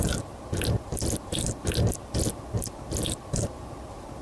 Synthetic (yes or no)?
no